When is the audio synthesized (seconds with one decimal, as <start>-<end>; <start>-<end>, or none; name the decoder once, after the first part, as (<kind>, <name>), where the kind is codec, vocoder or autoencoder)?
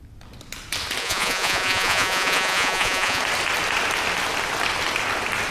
1.0-3.2 (vocoder, Vocos)